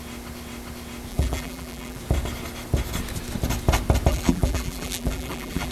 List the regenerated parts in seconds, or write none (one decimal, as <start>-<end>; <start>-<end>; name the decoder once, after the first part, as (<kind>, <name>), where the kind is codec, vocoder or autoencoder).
1.1-2.0 (vocoder, BigVGAN v2); 4.1-5.7

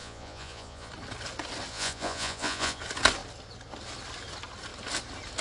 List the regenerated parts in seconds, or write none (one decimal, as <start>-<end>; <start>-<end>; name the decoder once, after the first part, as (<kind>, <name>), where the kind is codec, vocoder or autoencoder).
0.0-0.9 (vocoder, Vocos); 1.7-2.8

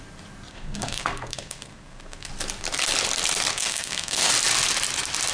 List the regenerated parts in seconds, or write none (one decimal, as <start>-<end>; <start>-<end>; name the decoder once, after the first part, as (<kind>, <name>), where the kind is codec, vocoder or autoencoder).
0.5-2.3 (codec, SNAC); 3.5-4.3

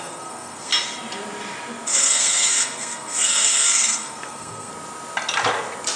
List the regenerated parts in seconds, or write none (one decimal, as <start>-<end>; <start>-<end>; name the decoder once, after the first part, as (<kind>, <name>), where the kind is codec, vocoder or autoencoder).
0.0-0.7 (codec, SNAC); 1.9-4.7

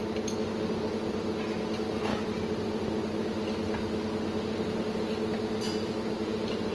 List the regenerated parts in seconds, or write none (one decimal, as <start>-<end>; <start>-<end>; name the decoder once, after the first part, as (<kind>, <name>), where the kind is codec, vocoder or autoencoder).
none

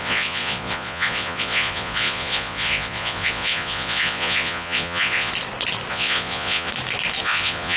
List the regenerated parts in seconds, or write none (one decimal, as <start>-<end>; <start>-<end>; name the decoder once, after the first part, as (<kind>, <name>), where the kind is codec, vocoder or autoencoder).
0.0-5.3 (vocoder, Vocos); 5.9-6.7; 7.2-7.8

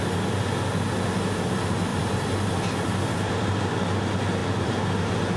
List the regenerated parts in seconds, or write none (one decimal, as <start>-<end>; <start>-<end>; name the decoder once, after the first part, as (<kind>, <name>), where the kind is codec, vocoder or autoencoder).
1.9-3.6 (vocoder, BigVGAN v2)

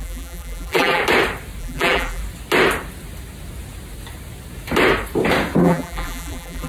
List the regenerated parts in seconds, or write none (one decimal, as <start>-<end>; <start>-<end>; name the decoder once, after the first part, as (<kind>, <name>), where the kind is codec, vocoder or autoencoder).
0.0-1.0 (vocoder, BigVGAN v2); 1.6-2.2; 5.6-6.7